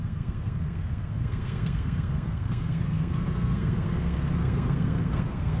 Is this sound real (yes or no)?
no